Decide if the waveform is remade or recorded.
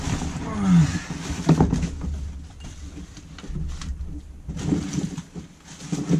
recorded